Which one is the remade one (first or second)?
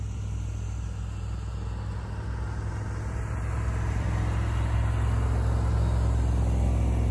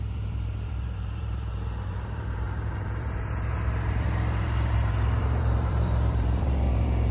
second